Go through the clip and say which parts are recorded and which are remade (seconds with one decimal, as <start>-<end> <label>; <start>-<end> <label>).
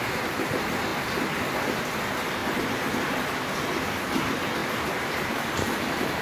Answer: 0.0-2.4 recorded; 2.4-3.2 remade; 3.2-4.6 recorded; 4.6-6.2 remade